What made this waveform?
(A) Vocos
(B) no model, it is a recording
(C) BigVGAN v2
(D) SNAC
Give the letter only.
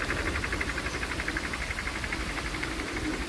B